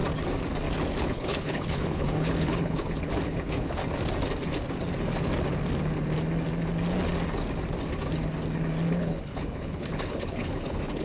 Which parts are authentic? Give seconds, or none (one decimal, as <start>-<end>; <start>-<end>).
0.0-1.0; 3.8-8.9